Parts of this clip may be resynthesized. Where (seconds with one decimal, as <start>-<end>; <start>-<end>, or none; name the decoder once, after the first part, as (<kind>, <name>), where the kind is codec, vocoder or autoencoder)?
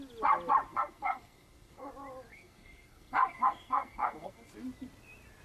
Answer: 0.7-1.9 (codec, SNAC); 2.3-4.5